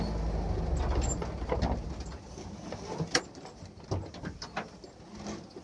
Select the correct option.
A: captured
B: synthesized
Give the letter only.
A